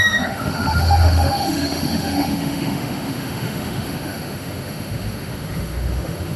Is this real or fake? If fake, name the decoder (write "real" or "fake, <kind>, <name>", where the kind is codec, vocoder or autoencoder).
fake, autoencoder, DAC-VAE